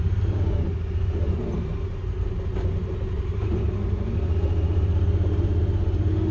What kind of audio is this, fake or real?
real